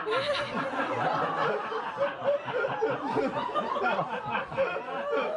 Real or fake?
real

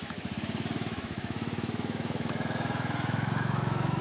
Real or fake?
fake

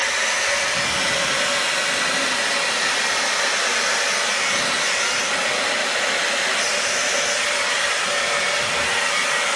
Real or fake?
real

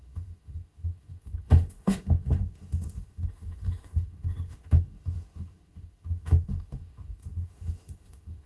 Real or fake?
fake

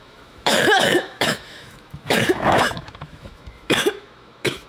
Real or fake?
fake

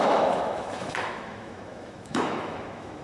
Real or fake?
fake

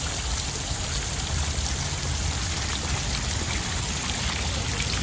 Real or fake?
real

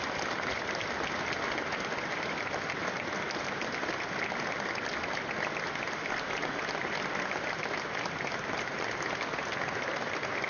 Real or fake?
real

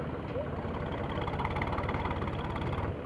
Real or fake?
real